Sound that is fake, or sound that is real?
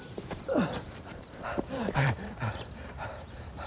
fake